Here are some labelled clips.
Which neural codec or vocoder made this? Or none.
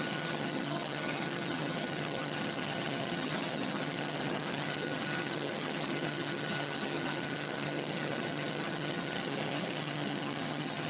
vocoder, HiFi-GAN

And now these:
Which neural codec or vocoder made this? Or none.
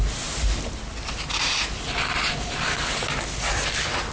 none